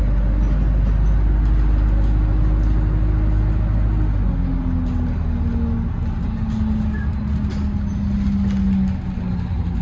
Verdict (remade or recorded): recorded